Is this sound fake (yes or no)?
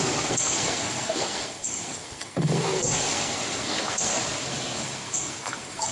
yes